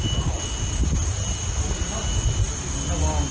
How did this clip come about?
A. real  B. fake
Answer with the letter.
A